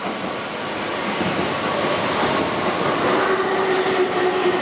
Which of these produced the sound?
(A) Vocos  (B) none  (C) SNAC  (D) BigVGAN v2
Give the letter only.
B